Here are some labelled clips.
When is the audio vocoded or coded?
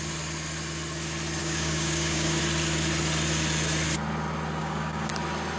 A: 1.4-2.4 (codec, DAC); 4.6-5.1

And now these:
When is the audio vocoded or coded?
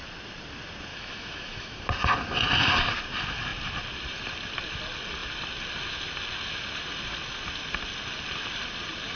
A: 0.9-1.8 (autoencoder, DAC-VAE)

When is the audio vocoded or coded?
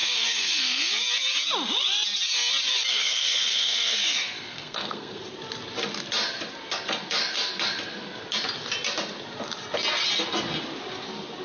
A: 0.0-0.9 (codec, SNAC); 2.9-5.2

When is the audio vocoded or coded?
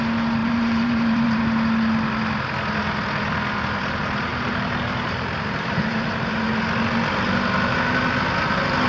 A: 0.4-1.4 (vocoder, BigVGAN v2); 4.0-6.4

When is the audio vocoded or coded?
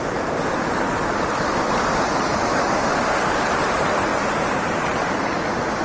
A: 2.3-3.6 (vocoder, BigVGAN v2); 4.1-5.8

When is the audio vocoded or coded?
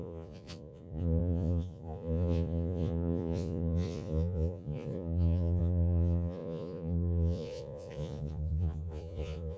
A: 0.0-9.6 (vocoder, Vocos)